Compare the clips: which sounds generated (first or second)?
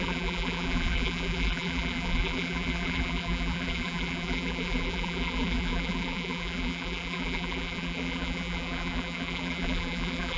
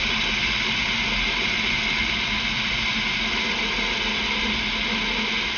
first